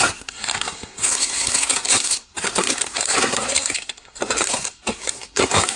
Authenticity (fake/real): fake